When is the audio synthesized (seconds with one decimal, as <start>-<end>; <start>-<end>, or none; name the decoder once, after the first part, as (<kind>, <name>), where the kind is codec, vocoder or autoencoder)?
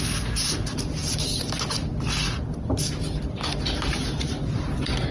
none